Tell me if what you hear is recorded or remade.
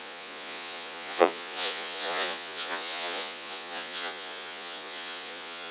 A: remade